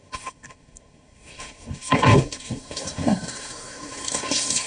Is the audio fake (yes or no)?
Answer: yes